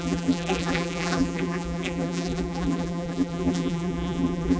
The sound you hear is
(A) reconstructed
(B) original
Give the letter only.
A